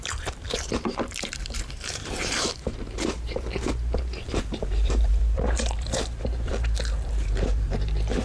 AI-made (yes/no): yes